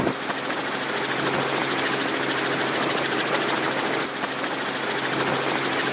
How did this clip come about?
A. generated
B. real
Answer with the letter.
B